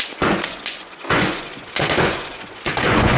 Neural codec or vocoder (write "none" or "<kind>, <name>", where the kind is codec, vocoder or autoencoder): vocoder, Vocos